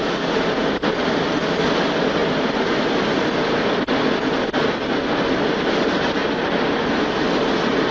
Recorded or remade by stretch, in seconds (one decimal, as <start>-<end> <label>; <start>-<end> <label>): 0.0-0.6 recorded; 0.6-1.6 remade; 1.6-7.9 recorded